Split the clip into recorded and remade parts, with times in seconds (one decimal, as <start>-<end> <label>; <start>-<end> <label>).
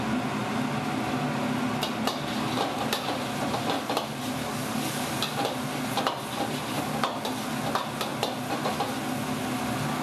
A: 0.0-4.4 recorded; 4.4-5.1 remade; 5.1-10.0 recorded